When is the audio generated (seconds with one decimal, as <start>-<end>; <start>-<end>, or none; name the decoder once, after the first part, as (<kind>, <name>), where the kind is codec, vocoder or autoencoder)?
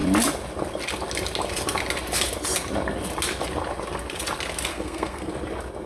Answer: 4.7-5.3 (codec, SNAC)